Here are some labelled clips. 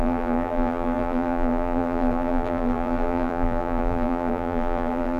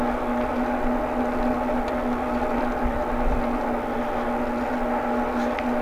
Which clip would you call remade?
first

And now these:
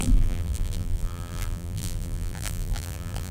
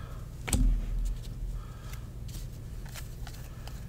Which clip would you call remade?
first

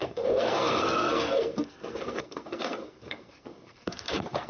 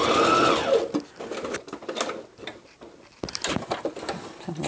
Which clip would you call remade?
first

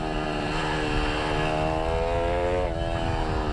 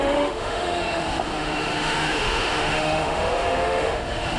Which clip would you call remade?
second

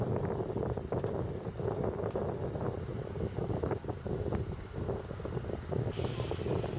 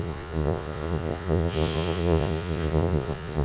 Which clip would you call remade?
second